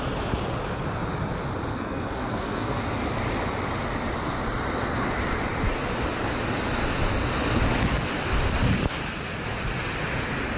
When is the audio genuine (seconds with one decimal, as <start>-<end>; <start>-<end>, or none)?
0.0-1.7; 2.8-10.6

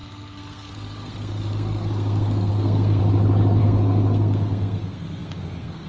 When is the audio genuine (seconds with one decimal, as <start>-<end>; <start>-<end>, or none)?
3.0-3.6